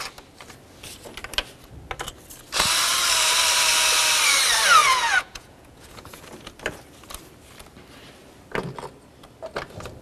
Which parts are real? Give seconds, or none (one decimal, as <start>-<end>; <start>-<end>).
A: 0.0-4.8; 6.2-10.0